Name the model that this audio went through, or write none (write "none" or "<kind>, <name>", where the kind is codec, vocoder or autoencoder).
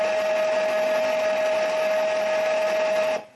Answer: none